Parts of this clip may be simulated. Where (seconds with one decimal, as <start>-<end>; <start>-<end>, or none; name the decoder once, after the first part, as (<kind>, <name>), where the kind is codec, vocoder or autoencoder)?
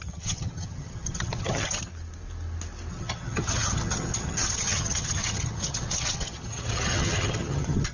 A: 0.0-1.9 (vocoder, HiFi-GAN); 2.9-7.9